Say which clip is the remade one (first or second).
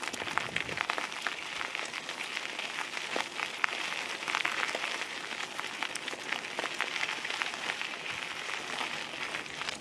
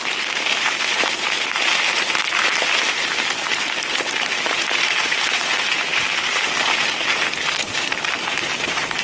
second